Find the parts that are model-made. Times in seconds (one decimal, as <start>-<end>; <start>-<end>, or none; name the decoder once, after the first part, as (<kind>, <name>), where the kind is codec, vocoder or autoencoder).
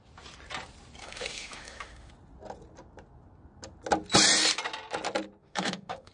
1.0-2.1 (autoencoder, DAC-VAE); 5.4-6.1